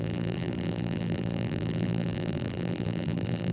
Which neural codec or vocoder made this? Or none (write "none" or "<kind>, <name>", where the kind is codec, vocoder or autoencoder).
vocoder, BigVGAN v2